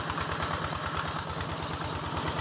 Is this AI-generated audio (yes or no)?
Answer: no